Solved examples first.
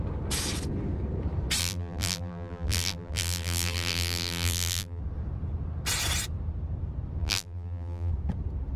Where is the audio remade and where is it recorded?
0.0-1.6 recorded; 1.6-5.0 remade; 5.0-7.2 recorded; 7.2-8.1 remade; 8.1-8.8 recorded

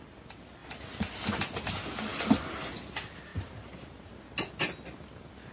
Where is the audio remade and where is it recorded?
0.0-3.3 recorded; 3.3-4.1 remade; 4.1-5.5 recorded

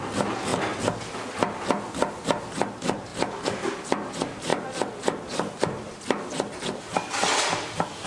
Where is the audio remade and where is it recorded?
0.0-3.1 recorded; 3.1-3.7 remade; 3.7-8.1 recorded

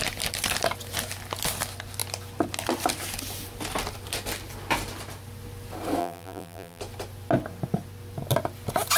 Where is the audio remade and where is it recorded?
0.0-6.0 recorded; 6.0-6.8 remade; 6.8-9.0 recorded